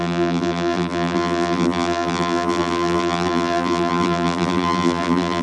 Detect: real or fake fake